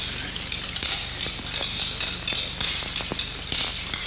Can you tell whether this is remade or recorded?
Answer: recorded